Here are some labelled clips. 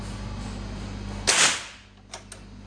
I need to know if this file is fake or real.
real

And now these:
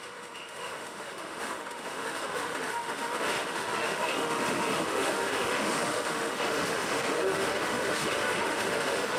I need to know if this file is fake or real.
fake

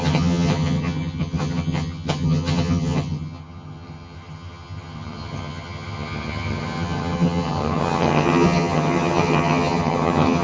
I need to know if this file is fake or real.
fake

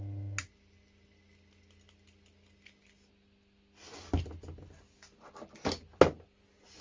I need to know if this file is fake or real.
real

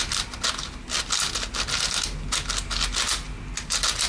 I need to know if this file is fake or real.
real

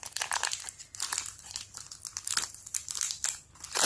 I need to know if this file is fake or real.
real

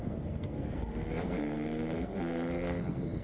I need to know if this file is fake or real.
fake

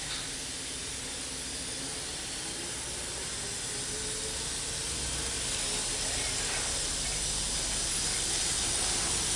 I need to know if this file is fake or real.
real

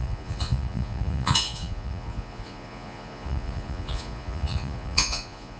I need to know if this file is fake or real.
fake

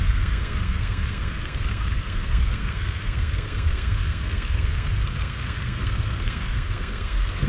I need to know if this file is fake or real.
fake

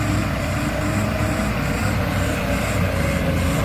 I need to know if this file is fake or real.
real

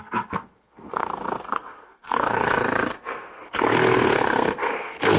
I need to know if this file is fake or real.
fake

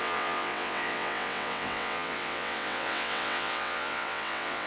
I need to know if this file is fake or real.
fake